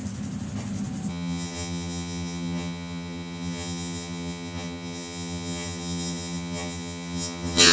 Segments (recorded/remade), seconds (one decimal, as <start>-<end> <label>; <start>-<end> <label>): 0.0-1.1 recorded; 1.1-7.7 remade